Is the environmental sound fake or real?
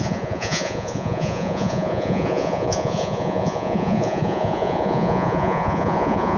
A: fake